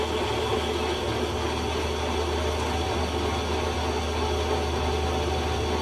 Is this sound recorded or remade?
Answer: recorded